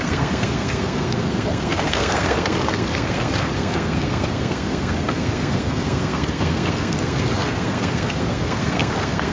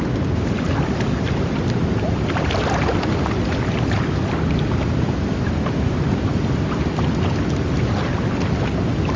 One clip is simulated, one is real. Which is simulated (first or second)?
first